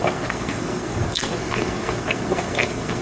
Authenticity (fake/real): fake